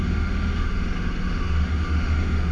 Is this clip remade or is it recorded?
remade